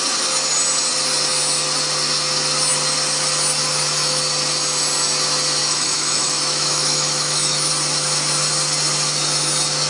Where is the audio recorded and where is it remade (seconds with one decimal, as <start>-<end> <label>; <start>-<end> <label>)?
0.0-3.6 recorded; 3.6-4.2 remade; 4.2-5.6 recorded; 5.6-7.7 remade; 7.7-9.9 recorded